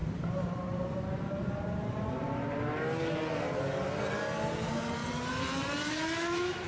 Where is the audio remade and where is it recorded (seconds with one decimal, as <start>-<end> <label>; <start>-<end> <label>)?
0.0-6.7 remade